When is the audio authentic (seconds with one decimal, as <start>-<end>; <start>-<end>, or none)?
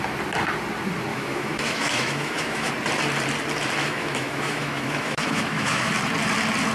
0.0-1.1; 2.7-3.8; 5.9-6.7